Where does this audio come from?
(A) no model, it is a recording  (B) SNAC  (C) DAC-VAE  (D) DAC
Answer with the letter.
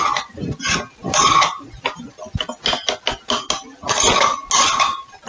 A